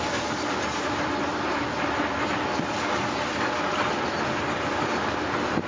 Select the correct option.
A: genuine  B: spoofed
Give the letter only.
A